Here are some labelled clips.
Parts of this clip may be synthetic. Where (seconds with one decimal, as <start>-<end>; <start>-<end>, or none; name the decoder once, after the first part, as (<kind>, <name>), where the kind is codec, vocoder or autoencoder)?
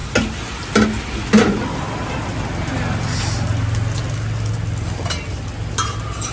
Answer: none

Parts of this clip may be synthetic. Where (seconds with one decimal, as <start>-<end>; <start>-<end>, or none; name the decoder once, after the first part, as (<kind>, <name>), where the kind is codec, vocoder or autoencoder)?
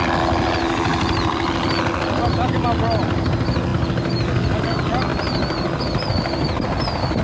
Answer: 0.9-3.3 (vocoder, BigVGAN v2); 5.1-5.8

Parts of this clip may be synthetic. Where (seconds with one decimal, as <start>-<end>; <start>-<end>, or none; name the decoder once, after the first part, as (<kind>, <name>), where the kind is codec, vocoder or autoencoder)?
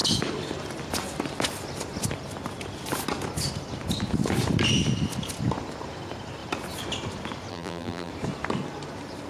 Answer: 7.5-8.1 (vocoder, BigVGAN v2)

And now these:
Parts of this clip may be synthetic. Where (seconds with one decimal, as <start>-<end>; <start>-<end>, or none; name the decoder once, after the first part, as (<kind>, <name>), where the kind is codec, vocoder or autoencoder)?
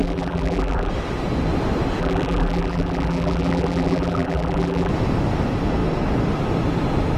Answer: 0.0-0.9 (vocoder, BigVGAN v2); 2.0-4.9